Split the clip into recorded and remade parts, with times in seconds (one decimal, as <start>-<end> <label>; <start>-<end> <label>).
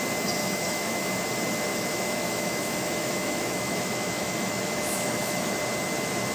0.0-0.4 recorded; 0.4-1.1 remade; 1.1-1.7 recorded; 1.7-5.5 remade; 5.5-6.3 recorded